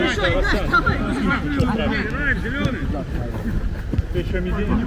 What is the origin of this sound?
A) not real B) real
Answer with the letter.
B